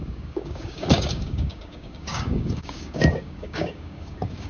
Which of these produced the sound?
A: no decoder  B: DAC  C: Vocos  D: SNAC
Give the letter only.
B